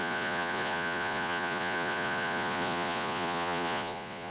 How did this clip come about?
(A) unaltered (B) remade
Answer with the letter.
B